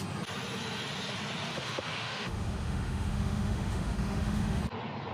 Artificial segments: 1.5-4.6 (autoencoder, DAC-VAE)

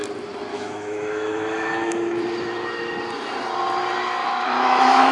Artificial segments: 0.5-2.2 (autoencoder, DAC-VAE); 4.2-5.1

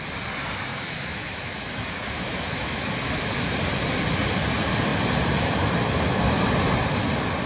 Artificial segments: 0.7-2.9 (autoencoder, DAC-VAE)

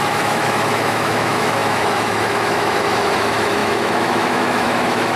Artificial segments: 0.0-5.2 (autoencoder, DAC-VAE)

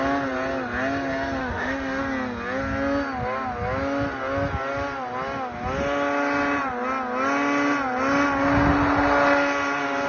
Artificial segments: 1.4-2.0 (autoencoder, DAC-VAE)

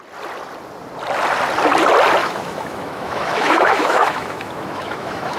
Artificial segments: 2.2-5.4 (autoencoder, DAC-VAE)

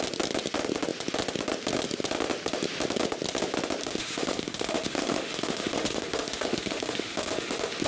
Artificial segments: 3.8-7.9 (autoencoder, DAC-VAE)